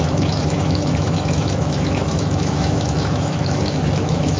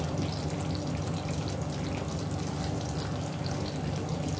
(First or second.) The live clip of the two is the second